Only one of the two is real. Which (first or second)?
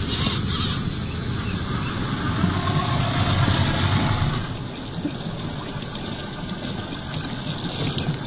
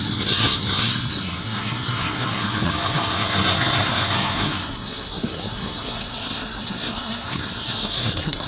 first